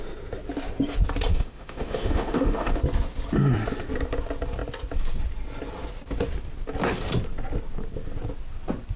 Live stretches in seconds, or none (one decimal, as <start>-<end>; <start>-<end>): 0.0-1.3; 2.8-9.0